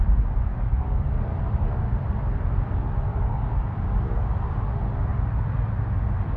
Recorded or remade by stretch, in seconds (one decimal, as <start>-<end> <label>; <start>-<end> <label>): 0.0-0.5 recorded; 0.5-1.4 remade; 1.4-3.1 recorded; 3.1-3.6 remade; 3.6-6.4 recorded